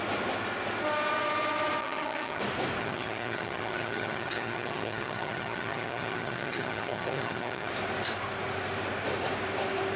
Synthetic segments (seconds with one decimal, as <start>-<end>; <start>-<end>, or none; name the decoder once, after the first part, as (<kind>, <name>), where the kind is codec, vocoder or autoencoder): 1.8-2.4 (vocoder, HiFi-GAN); 2.8-7.7